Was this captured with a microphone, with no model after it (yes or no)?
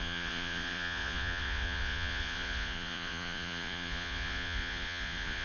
no